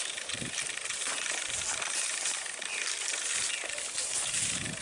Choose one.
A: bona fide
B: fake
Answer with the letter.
A